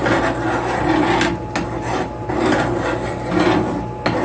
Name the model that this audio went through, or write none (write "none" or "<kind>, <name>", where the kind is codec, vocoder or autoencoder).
none